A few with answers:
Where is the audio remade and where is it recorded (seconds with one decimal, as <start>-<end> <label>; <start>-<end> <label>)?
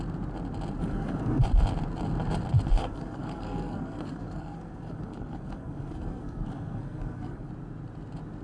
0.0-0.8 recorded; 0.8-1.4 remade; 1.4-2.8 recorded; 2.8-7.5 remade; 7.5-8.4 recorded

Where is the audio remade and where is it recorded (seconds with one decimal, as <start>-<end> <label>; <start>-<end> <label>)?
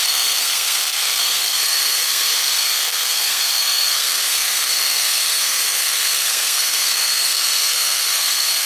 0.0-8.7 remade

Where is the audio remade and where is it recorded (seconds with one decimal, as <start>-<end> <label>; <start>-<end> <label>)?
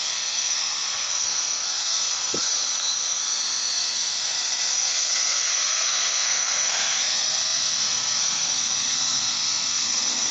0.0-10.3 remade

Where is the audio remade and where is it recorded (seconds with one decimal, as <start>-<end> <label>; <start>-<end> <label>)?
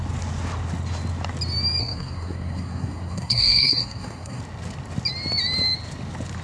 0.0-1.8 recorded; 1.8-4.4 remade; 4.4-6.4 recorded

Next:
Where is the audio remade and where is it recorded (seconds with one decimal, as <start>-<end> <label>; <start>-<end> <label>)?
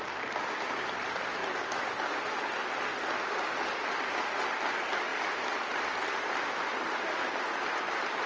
0.0-8.3 recorded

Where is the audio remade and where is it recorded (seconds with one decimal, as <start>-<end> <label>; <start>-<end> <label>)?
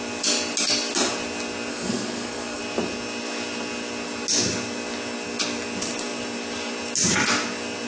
0.0-1.7 recorded; 1.7-2.6 remade; 2.6-7.9 recorded